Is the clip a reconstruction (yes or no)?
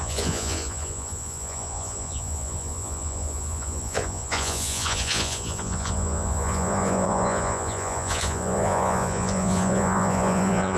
yes